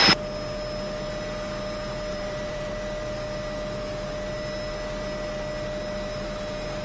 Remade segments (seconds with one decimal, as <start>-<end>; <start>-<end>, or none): 2.1-2.7